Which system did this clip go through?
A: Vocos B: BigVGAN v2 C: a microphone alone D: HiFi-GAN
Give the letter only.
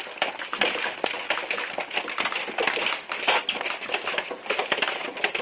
C